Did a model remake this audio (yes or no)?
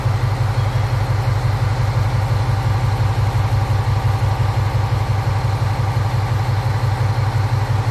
no